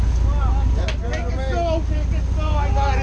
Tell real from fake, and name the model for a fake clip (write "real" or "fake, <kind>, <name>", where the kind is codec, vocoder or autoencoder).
real